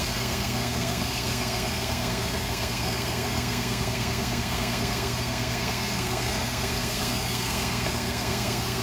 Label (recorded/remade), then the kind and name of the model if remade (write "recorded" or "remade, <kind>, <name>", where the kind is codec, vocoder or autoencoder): remade, codec, SNAC